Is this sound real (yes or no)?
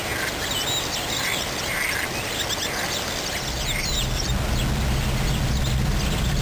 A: yes